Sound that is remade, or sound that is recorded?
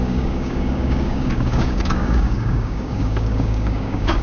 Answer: remade